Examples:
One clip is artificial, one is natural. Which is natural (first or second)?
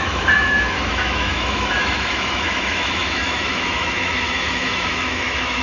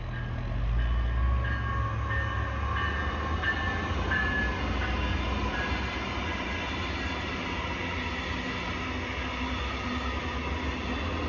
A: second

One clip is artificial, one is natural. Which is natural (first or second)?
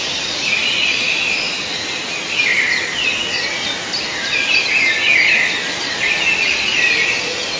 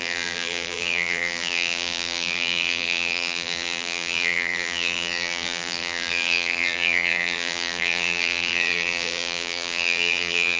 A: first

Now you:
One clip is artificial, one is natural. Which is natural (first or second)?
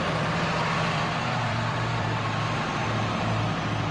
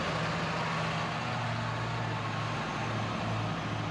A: second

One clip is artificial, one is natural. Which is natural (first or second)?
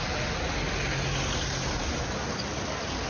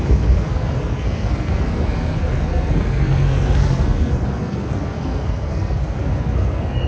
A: first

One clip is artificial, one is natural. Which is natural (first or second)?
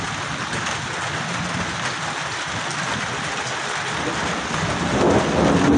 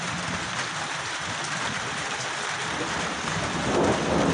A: first